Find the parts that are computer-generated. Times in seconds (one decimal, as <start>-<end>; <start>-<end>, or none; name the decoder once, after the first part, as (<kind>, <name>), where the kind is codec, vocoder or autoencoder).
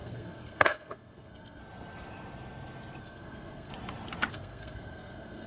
0.0-1.6 (codec, SNAC); 3.0-3.7; 4.3-5.5